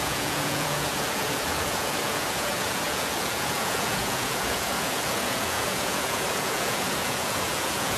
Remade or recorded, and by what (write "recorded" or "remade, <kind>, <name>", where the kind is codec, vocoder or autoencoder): remade, vocoder, Vocos